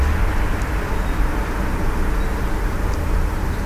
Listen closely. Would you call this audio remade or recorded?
recorded